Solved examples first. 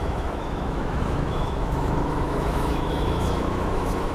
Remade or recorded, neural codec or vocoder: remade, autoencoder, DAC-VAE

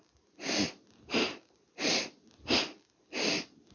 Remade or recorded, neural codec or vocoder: recorded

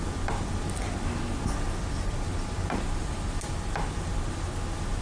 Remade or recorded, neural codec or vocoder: recorded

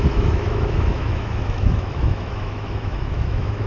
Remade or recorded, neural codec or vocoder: remade, autoencoder, DAC-VAE